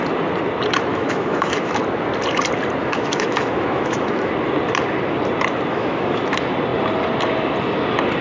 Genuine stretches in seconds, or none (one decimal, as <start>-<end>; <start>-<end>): 0.0-0.9; 1.8-2.8; 4.3-5.7; 6.2-8.2